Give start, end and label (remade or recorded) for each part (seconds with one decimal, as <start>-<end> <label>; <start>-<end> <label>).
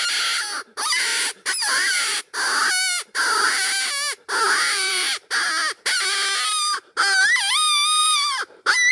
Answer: 0.0-1.1 recorded; 1.1-2.2 remade; 2.2-4.4 recorded; 4.4-5.3 remade; 5.3-8.0 recorded; 8.0-8.9 remade